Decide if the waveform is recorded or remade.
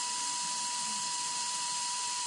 remade